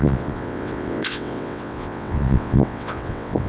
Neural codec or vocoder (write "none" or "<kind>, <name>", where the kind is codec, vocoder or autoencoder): vocoder, WaveNeXt